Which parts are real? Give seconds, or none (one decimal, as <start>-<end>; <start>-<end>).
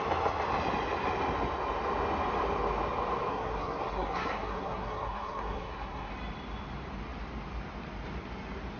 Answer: 0.0-3.3; 6.1-8.8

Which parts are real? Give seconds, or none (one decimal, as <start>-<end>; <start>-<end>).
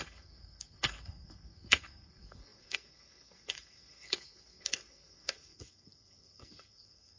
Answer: none